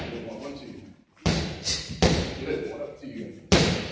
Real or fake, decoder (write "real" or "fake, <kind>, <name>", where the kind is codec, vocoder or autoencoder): real